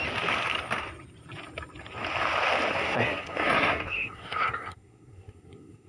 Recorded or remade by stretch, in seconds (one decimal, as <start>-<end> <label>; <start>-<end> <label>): 0.0-2.7 recorded; 2.7-5.9 remade